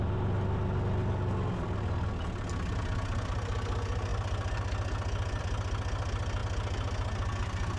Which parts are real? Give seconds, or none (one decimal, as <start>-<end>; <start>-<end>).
0.0-7.8